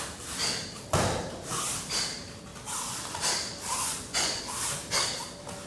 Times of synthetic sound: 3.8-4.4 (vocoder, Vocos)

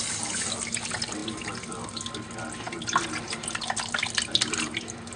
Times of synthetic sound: none

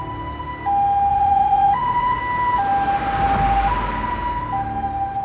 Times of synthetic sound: 1.1-2.2 (vocoder, Vocos)

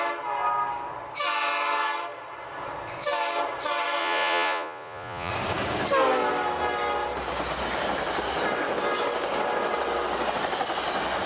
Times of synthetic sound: 4.0-5.3 (vocoder, Vocos)

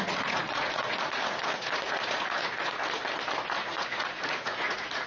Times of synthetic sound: 0.0-2.8 (vocoder, Vocos); 3.6-5.1

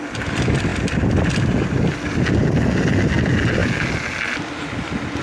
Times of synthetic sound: none